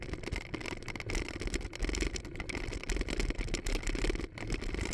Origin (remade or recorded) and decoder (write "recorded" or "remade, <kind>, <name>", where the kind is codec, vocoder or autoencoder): recorded